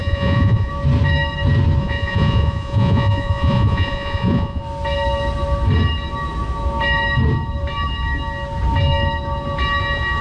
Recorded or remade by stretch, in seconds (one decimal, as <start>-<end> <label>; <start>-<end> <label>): 0.0-0.7 remade; 0.7-1.8 recorded; 1.8-4.6 remade; 4.6-10.2 recorded